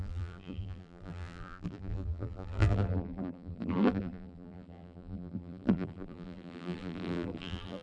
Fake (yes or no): yes